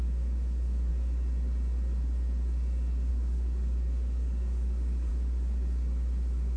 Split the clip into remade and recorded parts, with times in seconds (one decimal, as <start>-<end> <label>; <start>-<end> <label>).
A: 0.0-0.9 remade; 0.9-3.1 recorded; 3.1-5.1 remade; 5.1-6.6 recorded